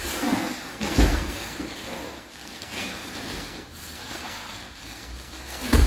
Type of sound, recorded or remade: remade